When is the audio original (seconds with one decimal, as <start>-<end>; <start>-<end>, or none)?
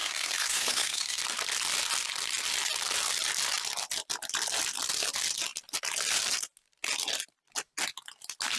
1.2-8.6